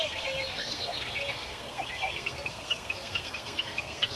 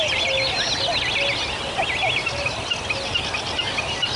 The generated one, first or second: first